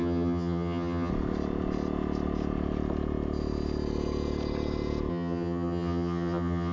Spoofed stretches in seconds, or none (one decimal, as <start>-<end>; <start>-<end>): 0.0-1.1; 5.1-6.7